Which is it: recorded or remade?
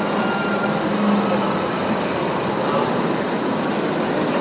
recorded